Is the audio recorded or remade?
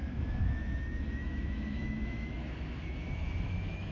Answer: remade